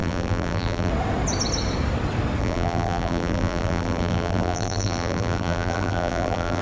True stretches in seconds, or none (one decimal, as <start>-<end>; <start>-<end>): 0.9-2.4

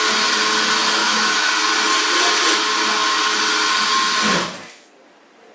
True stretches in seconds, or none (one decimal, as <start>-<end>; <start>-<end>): 0.0-1.0; 1.5-5.5

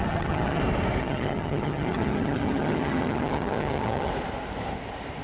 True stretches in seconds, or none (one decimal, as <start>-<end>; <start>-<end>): 0.6-1.0; 4.1-5.2

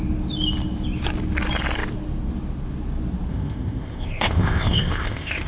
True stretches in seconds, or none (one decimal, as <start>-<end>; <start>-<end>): 0.0-3.3

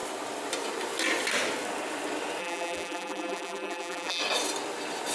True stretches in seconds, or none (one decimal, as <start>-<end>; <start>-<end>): 0.0-2.4; 4.2-5.1

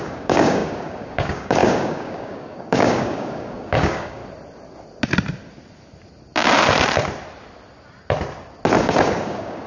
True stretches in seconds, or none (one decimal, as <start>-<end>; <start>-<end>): 4.2-8.8

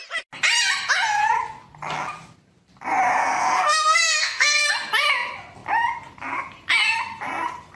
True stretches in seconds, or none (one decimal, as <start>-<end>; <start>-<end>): 0.0-3.2; 4.7-7.8

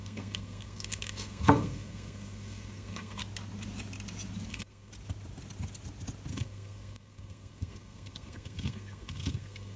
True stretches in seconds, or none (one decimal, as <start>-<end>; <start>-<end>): 3.2-4.5; 4.9-6.3